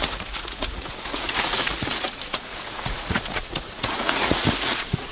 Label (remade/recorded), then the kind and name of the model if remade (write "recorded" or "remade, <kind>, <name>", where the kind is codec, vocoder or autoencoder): remade, vocoder, Vocos